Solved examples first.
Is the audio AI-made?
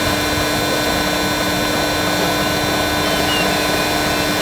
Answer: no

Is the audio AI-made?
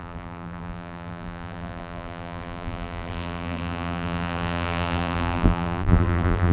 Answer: yes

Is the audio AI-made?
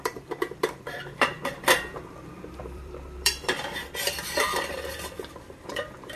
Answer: yes